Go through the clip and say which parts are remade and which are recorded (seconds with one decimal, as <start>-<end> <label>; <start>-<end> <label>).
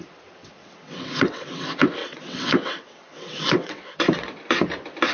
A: 0.0-0.4 recorded; 0.4-1.6 remade; 1.6-2.0 recorded; 2.0-4.4 remade; 4.4-5.1 recorded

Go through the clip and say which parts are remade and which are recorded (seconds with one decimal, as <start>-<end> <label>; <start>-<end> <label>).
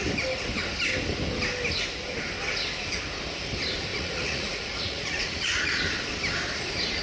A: 0.0-3.9 recorded; 3.9-5.8 remade; 5.8-7.0 recorded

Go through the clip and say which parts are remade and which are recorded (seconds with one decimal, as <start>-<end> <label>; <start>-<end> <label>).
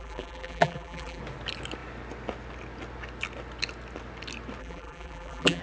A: 0.0-1.2 remade; 1.2-4.6 recorded; 4.6-5.6 remade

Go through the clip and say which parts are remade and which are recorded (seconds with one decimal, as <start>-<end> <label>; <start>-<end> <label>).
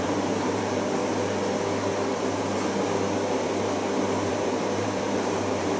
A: 0.0-1.0 remade; 1.0-4.3 recorded; 4.3-5.8 remade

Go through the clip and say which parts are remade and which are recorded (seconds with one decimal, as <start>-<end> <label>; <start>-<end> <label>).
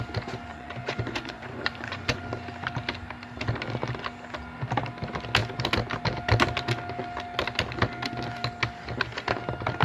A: 0.0-0.5 recorded; 0.5-2.2 remade; 2.2-9.8 recorded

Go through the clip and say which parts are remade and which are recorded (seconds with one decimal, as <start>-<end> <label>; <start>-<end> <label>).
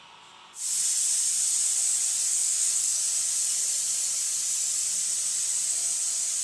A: 0.0-2.3 recorded; 2.3-3.0 remade; 3.0-6.4 recorded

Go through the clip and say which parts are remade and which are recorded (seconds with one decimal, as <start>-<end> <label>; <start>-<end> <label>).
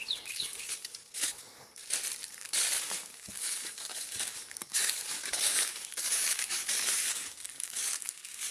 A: 0.0-1.8 remade; 1.8-2.3 recorded; 2.3-8.5 remade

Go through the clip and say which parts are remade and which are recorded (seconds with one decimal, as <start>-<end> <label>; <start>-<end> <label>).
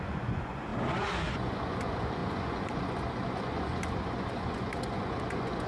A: 0.0-0.7 remade; 0.7-1.3 recorded; 1.3-5.7 remade